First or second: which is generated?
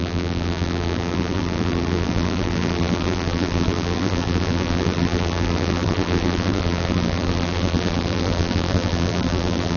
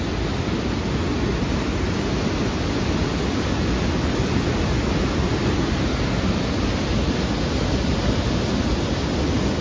first